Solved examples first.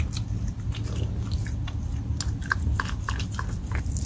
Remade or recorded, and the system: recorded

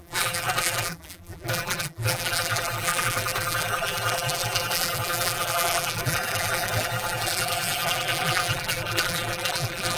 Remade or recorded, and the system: remade, vocoder, BigVGAN v2